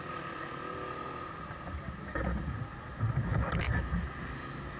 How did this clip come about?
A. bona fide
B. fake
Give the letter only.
A